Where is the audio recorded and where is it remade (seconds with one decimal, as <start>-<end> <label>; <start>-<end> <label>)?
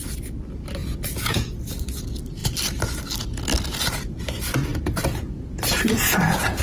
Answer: 0.0-0.8 recorded; 0.8-1.5 remade; 1.5-4.7 recorded; 4.7-6.6 remade